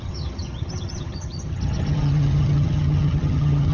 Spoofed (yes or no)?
yes